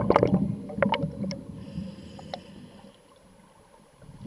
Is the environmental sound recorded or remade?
recorded